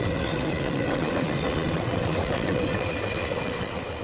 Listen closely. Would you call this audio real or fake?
fake